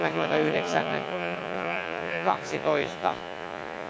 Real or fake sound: fake